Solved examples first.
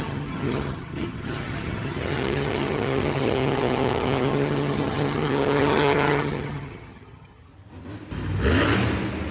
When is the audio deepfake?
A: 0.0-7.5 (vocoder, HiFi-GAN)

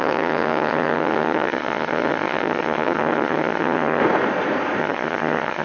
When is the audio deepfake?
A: 0.0-4.0 (vocoder, HiFi-GAN); 4.8-5.6